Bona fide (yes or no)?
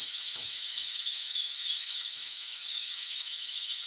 no